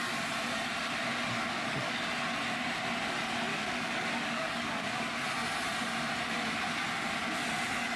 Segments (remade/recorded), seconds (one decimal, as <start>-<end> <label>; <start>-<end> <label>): 0.0-1.4 recorded; 1.4-2.0 remade; 2.0-3.5 recorded; 3.5-5.0 remade; 5.0-8.0 recorded